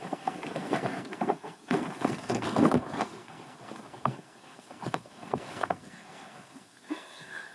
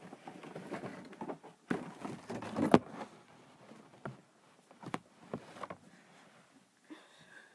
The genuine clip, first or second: second